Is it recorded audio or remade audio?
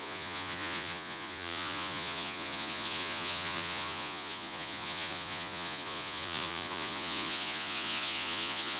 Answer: remade